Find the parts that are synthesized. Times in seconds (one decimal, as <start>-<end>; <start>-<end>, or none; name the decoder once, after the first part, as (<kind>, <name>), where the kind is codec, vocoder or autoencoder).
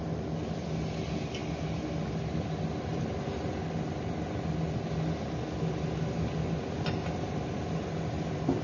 none